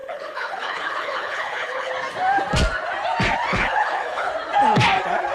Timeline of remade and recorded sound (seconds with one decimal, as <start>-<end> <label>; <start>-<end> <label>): 0.0-1.9 remade; 1.9-3.5 recorded; 3.5-4.3 remade; 4.3-5.3 recorded